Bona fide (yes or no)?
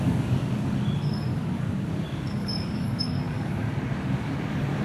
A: no